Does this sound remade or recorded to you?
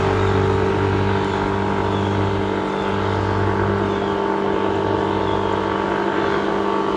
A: recorded